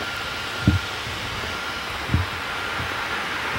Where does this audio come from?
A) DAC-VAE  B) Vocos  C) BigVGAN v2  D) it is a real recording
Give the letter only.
D